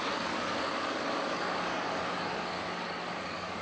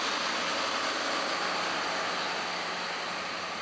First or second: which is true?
second